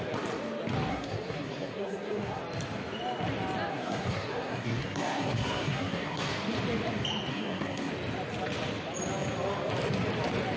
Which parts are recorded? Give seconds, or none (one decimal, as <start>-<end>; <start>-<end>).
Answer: 0.0-0.9; 2.4-3.7; 6.3-7.3; 7.9-10.6